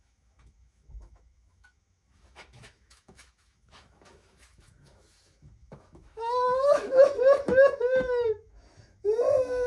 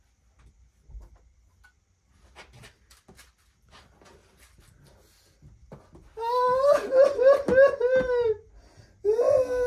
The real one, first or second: second